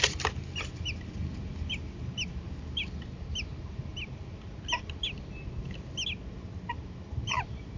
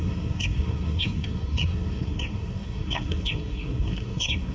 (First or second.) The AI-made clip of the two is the second